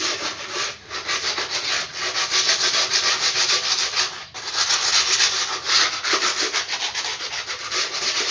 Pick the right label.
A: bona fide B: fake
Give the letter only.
A